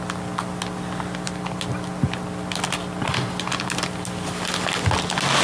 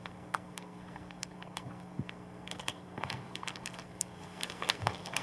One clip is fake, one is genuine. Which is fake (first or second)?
second